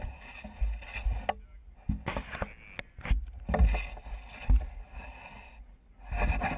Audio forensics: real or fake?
real